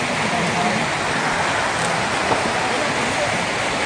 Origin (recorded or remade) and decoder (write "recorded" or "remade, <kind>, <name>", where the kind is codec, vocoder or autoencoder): recorded